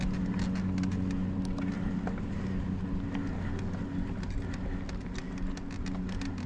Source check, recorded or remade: recorded